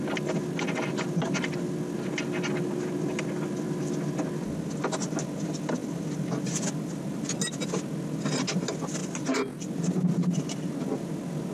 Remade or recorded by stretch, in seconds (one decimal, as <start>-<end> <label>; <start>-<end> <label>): 0.0-11.5 recorded